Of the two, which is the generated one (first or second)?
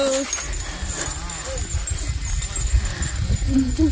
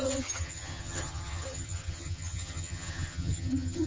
second